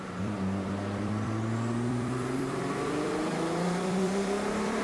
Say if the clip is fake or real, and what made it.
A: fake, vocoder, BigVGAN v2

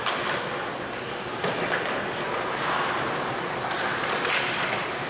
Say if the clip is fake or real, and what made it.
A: real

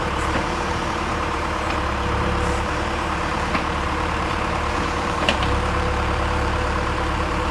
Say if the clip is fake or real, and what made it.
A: fake, vocoder, BigVGAN v2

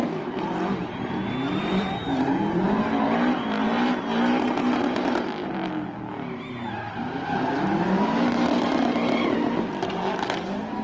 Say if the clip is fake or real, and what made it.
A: real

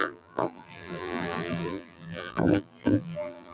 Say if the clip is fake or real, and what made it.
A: fake, vocoder, BigVGAN v2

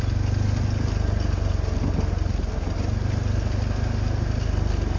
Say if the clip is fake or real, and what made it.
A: real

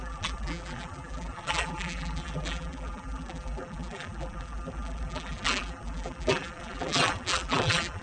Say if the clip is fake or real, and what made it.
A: fake, vocoder, BigVGAN v2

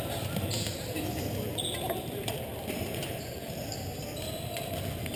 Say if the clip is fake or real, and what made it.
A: real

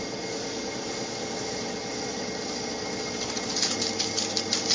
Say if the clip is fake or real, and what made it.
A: real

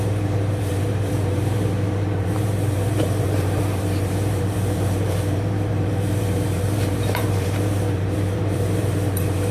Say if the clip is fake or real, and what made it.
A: fake, vocoder, BigVGAN v2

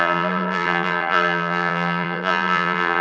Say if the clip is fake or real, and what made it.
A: fake, vocoder, BigVGAN v2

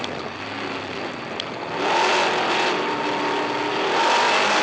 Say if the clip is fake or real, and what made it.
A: real